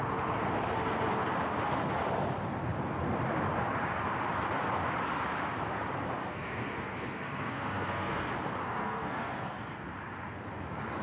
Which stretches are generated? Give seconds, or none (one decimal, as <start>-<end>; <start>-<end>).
6.2-8.2; 8.6-9.5